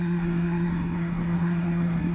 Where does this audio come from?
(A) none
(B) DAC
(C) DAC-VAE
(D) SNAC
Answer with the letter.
D